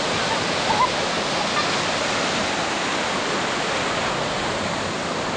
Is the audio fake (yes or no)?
no